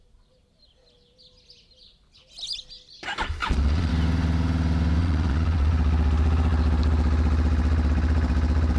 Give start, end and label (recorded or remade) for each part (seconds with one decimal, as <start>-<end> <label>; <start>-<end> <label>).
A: 0.0-3.4 recorded; 3.4-3.9 remade; 3.9-5.0 recorded; 5.0-5.7 remade; 5.7-8.8 recorded